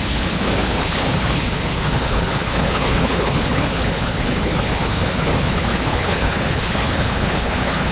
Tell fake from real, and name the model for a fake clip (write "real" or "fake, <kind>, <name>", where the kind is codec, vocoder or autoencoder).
fake, codec, HILCodec